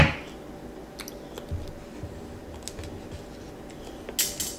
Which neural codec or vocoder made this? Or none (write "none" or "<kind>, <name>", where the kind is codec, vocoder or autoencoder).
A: none